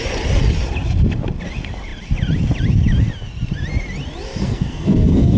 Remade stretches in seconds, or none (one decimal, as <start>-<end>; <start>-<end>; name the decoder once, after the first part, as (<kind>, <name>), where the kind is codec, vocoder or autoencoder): 4.4-5.4 (codec, SNAC)